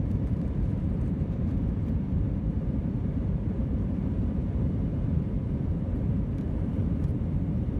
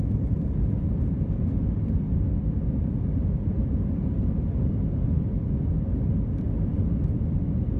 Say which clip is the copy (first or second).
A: first